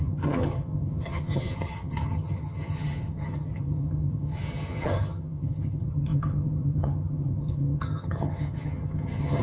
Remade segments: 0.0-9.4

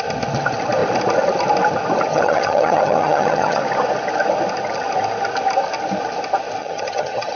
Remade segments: 2.1-3.6; 6.6-7.4